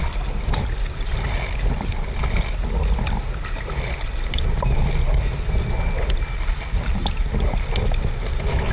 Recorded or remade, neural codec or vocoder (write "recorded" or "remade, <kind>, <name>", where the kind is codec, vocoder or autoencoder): recorded